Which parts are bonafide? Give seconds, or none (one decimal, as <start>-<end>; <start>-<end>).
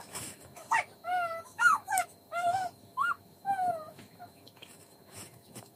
none